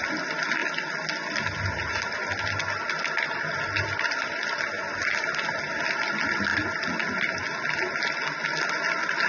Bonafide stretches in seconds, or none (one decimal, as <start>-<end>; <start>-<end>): 0.0-9.3